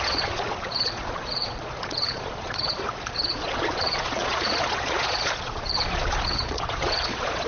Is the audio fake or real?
fake